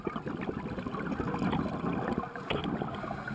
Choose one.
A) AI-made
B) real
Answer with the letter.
B